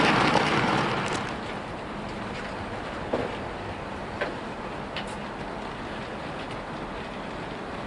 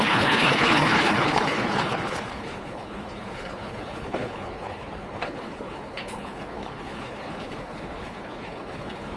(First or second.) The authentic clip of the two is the first